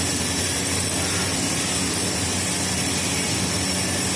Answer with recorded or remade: recorded